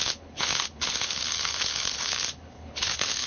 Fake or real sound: fake